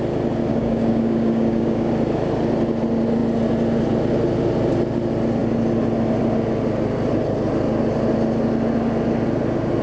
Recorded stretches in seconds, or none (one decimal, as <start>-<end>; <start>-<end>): 0.0-0.5; 1.9-9.8